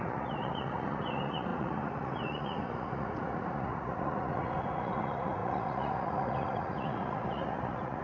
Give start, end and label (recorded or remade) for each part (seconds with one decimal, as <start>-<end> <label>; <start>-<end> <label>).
0.0-8.0 remade